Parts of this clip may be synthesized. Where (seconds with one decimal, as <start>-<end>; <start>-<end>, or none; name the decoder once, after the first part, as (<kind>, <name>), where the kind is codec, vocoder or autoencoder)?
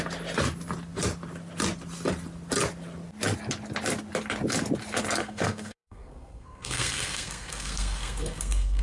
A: 5.2-8.8 (codec, SNAC)